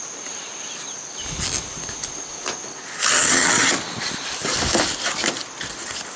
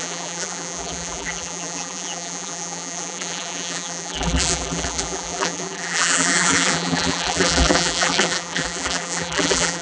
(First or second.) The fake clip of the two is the second